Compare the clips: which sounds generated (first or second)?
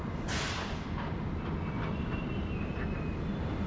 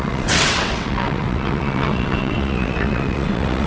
second